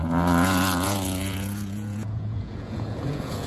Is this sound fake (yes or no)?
yes